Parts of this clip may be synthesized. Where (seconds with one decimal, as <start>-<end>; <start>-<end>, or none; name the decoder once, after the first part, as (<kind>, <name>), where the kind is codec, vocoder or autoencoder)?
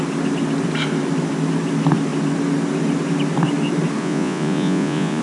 4.0-5.2 (vocoder, Vocos)